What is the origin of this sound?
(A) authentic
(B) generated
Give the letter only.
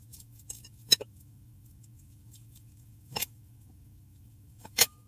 B